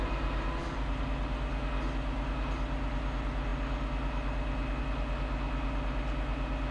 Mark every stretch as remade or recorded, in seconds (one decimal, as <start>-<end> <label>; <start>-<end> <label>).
0.0-1.0 remade; 1.0-6.7 recorded